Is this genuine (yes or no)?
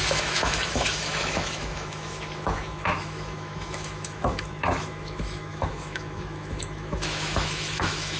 no